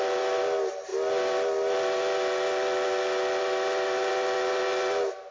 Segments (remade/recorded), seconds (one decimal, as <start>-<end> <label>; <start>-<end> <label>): 0.0-5.3 recorded